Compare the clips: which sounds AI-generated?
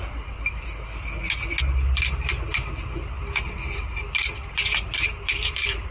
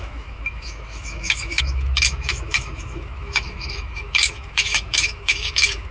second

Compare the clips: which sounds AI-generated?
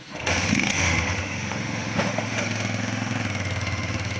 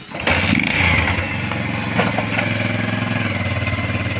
first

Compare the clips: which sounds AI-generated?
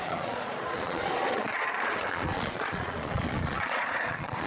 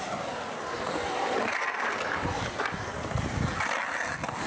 first